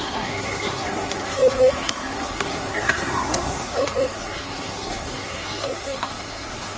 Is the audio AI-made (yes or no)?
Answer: yes